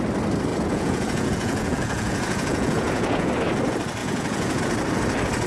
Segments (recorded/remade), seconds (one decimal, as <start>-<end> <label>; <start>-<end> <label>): 0.0-0.5 recorded; 0.5-3.3 remade; 3.3-4.0 recorded; 4.0-4.6 remade; 4.6-5.5 recorded